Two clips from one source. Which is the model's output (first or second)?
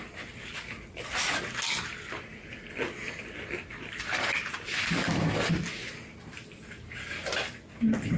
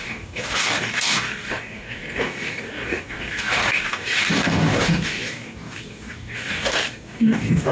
second